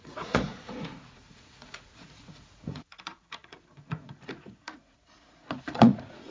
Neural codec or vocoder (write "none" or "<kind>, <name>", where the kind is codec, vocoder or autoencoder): vocoder, Vocos